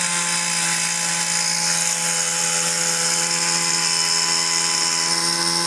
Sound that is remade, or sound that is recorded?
recorded